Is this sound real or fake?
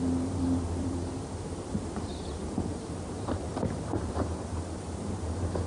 fake